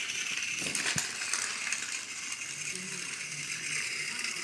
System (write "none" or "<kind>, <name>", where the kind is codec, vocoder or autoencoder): vocoder, BigVGAN v2